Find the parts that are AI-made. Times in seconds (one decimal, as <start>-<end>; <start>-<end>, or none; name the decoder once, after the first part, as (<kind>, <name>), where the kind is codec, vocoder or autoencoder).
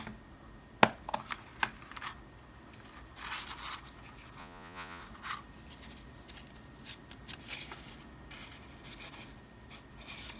4.4-5.0 (vocoder, Vocos)